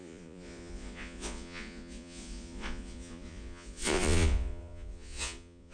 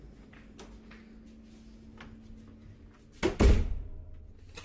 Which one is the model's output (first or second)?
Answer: first